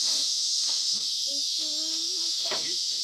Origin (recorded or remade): remade